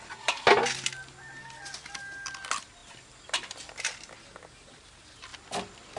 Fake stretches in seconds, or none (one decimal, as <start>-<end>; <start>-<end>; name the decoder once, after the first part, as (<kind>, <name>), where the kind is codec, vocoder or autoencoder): none